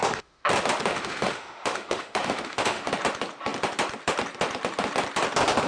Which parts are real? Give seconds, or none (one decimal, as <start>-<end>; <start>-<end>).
0.5-0.9; 2.9-5.7